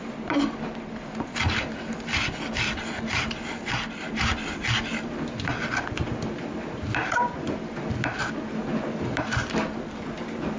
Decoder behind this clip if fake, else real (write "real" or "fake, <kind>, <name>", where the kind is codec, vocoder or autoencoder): real